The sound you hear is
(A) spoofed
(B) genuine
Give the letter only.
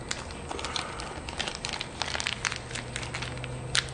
B